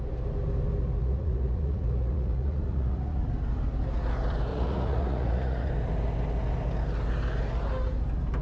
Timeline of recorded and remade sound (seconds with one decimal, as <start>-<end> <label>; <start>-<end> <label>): 0.0-1.0 recorded; 1.0-3.2 remade; 3.2-4.5 recorded; 4.5-5.7 remade; 5.7-8.4 recorded